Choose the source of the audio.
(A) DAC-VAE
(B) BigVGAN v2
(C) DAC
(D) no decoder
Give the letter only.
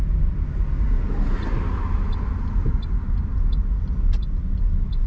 D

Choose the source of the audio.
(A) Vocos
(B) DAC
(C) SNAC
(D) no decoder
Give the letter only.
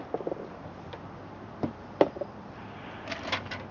D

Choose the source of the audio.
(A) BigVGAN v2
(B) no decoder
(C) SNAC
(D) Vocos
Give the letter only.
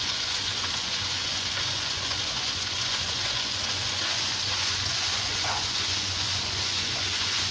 D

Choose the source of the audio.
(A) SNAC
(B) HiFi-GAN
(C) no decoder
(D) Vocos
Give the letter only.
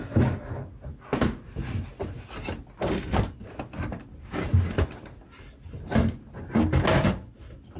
C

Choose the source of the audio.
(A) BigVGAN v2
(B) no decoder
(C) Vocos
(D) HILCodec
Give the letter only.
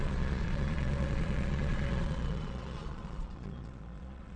C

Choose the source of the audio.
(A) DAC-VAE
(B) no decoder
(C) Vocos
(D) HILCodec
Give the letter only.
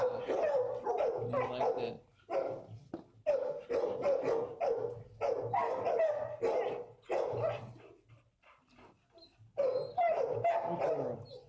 B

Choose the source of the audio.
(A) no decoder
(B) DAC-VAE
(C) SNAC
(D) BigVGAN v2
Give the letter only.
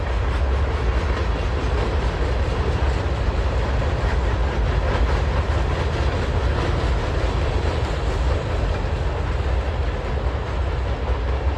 A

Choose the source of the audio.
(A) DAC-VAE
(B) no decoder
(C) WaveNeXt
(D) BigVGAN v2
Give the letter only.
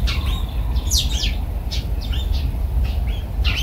B